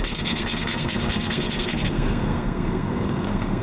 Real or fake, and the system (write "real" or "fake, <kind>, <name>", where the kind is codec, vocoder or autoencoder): fake, codec, SNAC